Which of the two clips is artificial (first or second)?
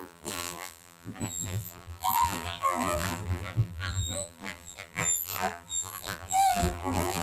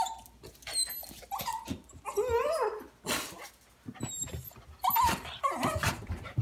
first